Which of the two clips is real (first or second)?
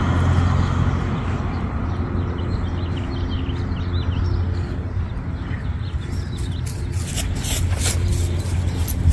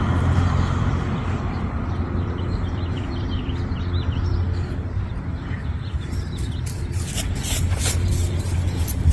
first